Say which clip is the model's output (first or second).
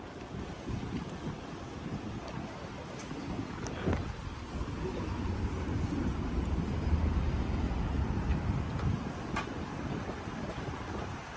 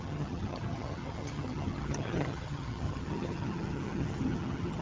second